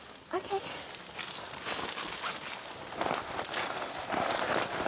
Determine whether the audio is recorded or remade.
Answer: recorded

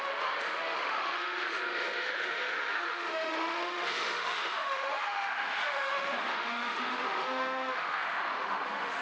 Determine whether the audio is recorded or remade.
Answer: remade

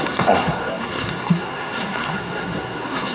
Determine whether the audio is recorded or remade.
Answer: remade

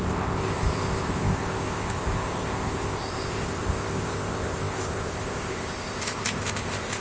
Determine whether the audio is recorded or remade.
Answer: remade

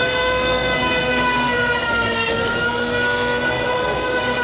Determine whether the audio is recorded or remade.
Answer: remade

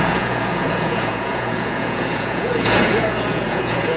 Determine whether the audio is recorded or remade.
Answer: remade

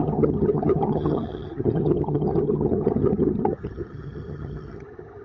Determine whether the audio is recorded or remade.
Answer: remade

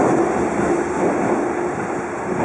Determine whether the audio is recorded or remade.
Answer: recorded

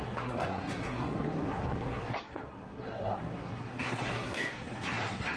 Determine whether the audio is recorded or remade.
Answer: remade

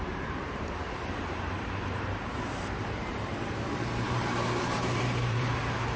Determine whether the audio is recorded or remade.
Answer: remade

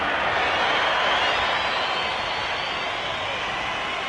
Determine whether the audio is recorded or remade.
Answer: recorded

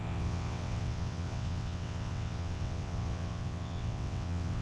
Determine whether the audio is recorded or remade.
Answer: remade